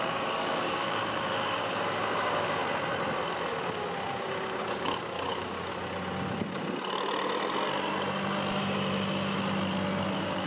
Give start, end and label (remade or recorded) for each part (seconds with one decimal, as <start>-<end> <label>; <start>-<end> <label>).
0.0-2.6 remade; 2.6-4.1 recorded; 4.1-5.7 remade; 5.7-10.1 recorded; 10.1-10.5 remade